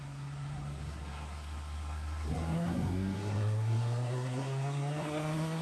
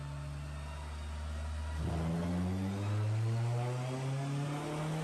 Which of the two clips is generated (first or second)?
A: first